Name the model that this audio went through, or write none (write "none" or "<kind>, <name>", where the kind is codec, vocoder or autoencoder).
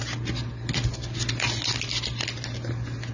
none